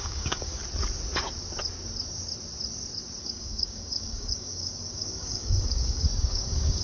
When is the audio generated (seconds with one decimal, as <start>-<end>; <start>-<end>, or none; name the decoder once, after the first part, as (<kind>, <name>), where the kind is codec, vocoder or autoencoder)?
0.0-0.6 (codec, DAC); 3.2-6.8